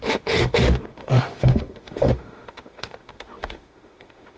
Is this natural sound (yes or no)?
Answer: no